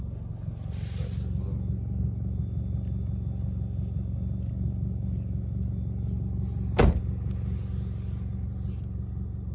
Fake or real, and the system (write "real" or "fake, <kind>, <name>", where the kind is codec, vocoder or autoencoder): real